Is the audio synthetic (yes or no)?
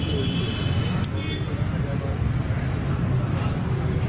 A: no